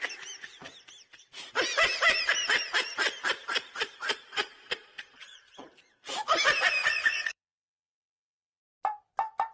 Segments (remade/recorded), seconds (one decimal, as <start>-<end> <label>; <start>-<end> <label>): 0.0-3.4 recorded; 3.4-5.4 remade; 5.4-6.8 recorded; 6.8-8.6 remade; 8.6-9.5 recorded